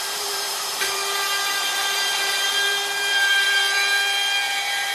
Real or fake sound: fake